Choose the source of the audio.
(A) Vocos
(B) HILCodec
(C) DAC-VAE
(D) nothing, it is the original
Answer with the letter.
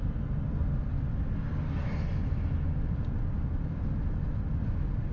D